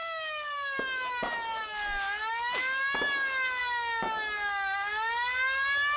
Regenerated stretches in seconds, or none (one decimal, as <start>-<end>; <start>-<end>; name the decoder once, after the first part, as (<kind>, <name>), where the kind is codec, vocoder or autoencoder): none